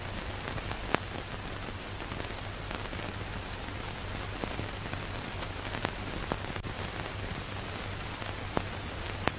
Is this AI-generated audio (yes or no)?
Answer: no